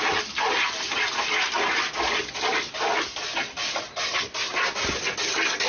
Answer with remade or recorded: recorded